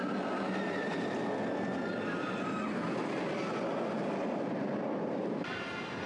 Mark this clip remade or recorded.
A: recorded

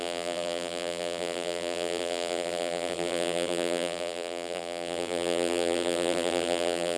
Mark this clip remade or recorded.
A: remade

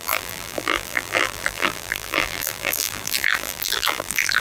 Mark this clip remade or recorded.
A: remade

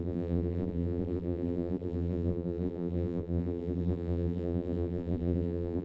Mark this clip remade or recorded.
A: remade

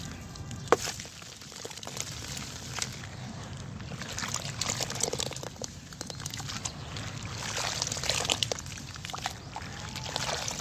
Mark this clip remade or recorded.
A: recorded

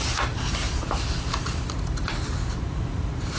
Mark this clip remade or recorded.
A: remade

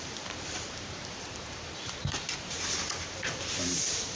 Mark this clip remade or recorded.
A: remade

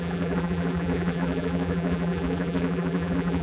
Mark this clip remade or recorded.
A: remade